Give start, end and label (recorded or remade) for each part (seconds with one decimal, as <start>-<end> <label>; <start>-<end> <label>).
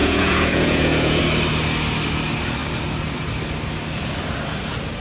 0.0-1.2 remade; 1.2-5.0 recorded